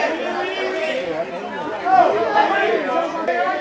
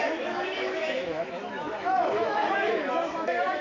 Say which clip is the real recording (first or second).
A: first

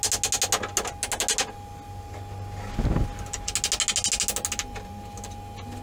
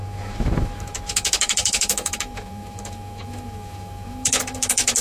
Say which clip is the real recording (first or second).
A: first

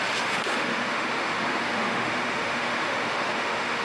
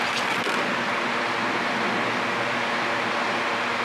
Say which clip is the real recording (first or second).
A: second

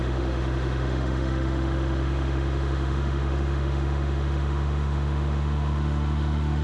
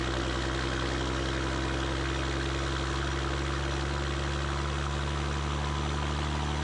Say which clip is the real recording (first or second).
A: second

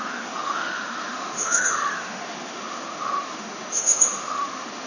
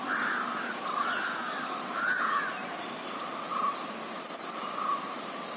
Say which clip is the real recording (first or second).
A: second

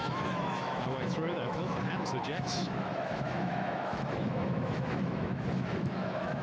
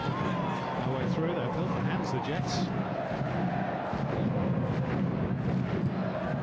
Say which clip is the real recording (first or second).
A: second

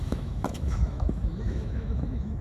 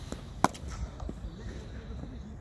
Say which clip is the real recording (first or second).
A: second